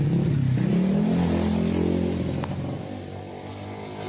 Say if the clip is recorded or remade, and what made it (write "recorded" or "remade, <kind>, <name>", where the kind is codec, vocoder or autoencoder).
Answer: recorded